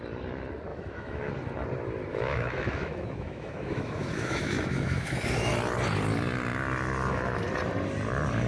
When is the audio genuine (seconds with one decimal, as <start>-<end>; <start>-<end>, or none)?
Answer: 0.0-0.7; 1.3-2.1; 5.5-8.5